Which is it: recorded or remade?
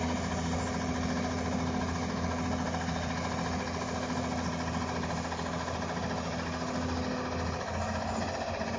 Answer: recorded